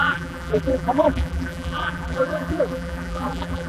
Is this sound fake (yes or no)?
yes